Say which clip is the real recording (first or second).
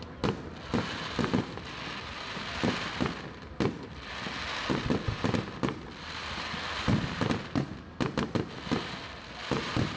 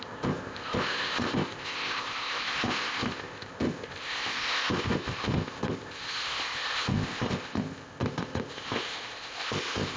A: first